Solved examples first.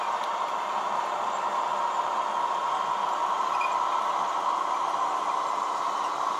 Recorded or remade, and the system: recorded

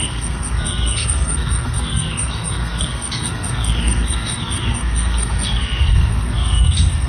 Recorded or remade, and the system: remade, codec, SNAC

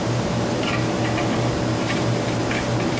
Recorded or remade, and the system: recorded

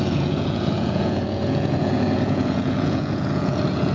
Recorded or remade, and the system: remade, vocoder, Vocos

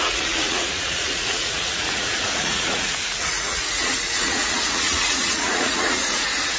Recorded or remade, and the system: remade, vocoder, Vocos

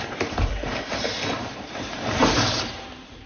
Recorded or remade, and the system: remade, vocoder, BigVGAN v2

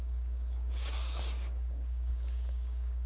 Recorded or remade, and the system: remade, codec, DAC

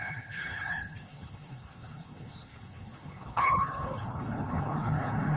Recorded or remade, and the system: remade, codec, HILCodec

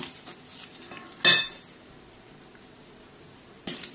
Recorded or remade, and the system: recorded